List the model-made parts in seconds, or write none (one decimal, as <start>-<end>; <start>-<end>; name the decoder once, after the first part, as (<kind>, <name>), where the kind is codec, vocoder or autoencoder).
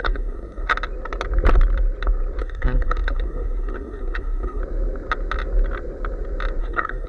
0.0-0.7 (codec, SNAC); 2.4-4.6; 6.6-7.1